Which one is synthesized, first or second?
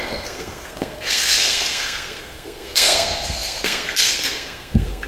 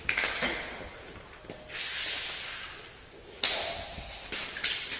first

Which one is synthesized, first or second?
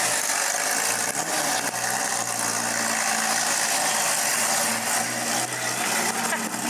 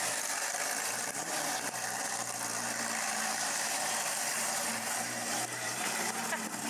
second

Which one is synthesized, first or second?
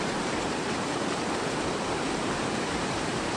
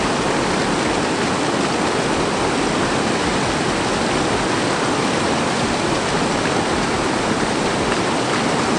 first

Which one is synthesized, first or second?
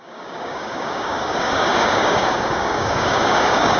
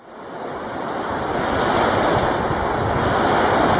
first